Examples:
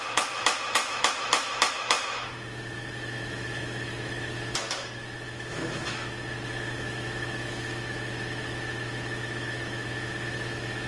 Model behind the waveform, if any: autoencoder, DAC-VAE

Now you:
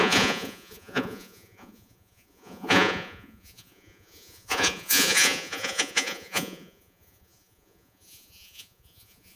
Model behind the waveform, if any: vocoder, Vocos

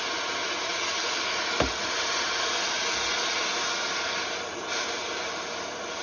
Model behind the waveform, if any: none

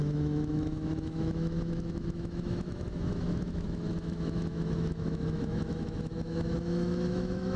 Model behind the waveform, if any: autoencoder, DAC-VAE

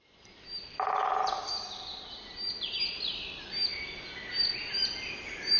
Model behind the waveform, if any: none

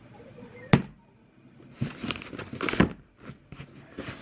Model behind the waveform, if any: none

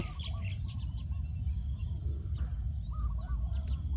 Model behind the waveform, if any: none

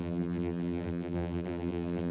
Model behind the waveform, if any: vocoder, BigVGAN v2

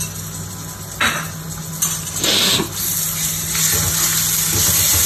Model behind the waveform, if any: none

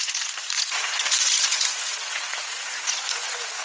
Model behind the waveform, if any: vocoder, Vocos